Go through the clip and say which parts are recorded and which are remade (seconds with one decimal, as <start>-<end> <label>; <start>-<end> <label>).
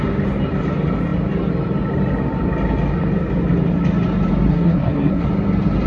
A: 0.0-4.5 recorded; 4.5-5.3 remade; 5.3-5.9 recorded